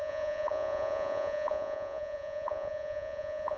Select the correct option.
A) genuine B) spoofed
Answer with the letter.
B